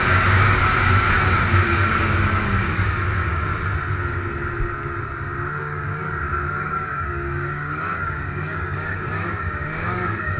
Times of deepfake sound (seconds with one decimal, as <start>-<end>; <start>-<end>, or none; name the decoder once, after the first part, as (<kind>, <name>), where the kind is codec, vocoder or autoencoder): 0.0-3.5 (codec, DAC); 5.6-6.0; 6.6-10.4